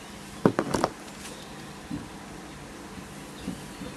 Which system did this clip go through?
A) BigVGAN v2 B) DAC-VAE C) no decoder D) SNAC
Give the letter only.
C